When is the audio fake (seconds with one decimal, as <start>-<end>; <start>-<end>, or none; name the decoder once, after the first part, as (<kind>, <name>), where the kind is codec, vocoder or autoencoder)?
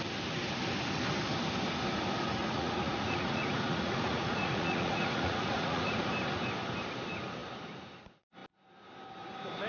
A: 2.4-6.1 (vocoder, Vocos)